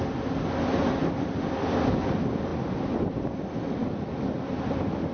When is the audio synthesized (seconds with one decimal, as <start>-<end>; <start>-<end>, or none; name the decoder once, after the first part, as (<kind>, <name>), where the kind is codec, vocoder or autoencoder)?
1.0-2.0 (vocoder, BigVGAN v2)

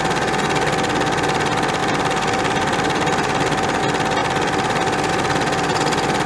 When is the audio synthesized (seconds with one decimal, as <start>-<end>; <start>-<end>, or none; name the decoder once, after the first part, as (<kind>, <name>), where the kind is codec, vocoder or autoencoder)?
1.8-3.8 (vocoder, BigVGAN v2)

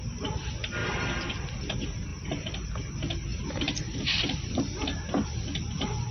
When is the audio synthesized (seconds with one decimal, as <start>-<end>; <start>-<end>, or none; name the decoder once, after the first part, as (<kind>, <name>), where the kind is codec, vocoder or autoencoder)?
0.8-1.3 (vocoder, BigVGAN v2); 2.1-2.7; 3.3-4.8

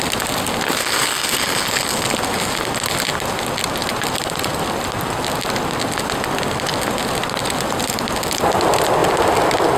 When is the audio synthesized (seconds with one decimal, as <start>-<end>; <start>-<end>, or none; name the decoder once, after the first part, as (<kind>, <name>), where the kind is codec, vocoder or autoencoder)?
none

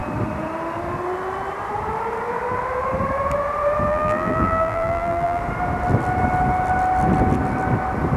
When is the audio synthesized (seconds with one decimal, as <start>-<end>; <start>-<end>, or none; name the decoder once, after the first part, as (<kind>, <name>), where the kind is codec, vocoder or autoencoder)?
3.9-5.4 (vocoder, BigVGAN v2)